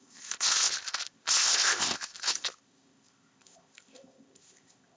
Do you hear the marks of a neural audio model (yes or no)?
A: yes